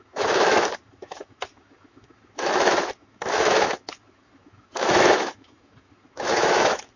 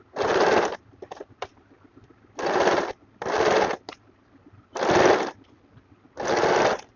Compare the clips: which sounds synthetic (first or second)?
first